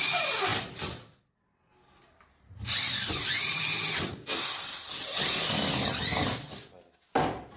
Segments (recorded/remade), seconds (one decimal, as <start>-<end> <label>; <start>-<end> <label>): 0.0-7.6 recorded